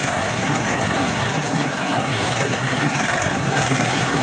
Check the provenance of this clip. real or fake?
fake